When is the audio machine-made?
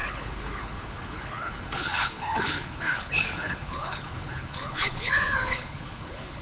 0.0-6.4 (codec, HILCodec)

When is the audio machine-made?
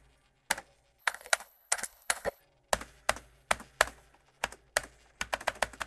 1.0-2.4 (codec, HILCodec)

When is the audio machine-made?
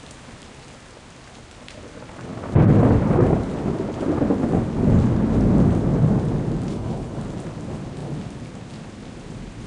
6.7-7.2 (codec, HILCodec)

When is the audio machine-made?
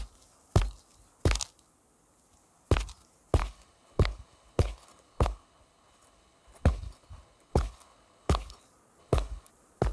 3.4-8.6 (codec, HILCodec); 9.0-9.5